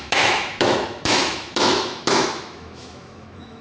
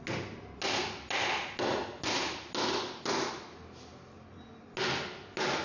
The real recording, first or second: second